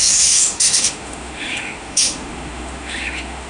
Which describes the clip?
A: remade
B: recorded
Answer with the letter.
A